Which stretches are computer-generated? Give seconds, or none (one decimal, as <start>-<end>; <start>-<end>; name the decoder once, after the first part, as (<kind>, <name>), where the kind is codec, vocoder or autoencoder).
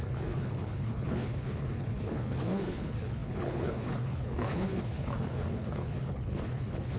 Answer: 0.0-7.0 (codec, HILCodec)